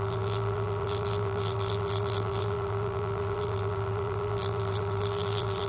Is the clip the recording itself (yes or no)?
no